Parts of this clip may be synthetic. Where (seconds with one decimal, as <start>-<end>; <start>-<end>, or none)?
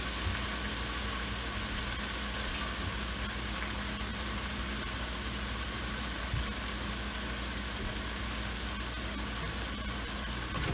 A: 4.1-6.2